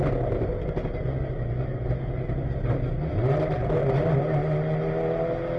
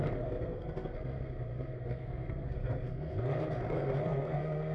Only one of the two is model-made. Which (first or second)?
second